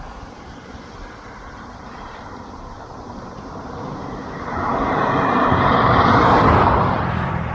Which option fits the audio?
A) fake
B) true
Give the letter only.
A